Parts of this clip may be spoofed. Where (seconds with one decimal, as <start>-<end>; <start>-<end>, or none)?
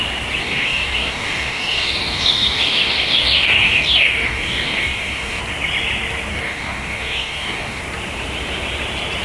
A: 0.4-5.4; 6.3-7.8